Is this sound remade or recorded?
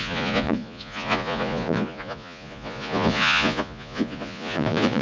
remade